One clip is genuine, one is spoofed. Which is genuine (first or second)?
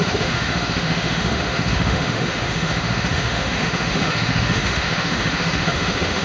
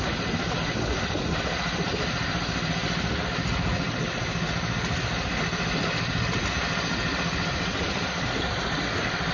second